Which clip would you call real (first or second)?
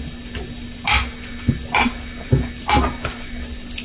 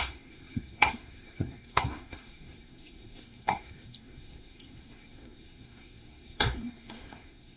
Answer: first